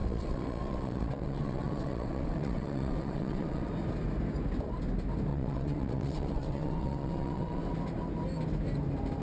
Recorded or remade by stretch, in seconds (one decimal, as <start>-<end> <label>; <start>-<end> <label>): 0.0-3.7 remade; 3.7-5.3 recorded; 5.3-7.6 remade; 7.6-9.2 recorded